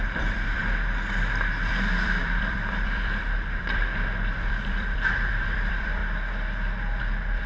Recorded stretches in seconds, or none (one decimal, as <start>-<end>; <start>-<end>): 0.6-1.5; 6.0-7.0